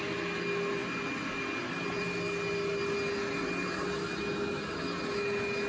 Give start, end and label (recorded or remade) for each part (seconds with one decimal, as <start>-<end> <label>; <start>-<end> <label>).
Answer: 0.0-5.7 recorded